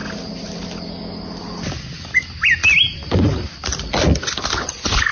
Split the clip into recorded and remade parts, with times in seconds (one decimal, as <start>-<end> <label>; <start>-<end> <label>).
0.0-5.1 recorded

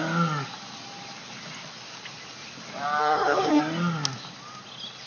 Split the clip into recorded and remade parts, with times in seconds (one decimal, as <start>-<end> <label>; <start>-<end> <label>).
0.0-3.0 recorded; 3.0-3.6 remade; 3.6-5.1 recorded

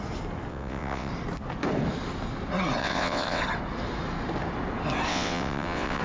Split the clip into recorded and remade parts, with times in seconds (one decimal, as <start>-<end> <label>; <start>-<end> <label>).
0.0-0.5 recorded; 0.5-1.1 remade; 1.1-2.8 recorded; 2.8-3.4 remade; 3.4-5.1 recorded; 5.1-6.0 remade